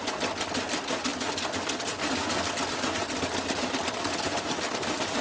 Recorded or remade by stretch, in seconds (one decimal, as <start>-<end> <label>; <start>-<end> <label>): 0.0-5.2 recorded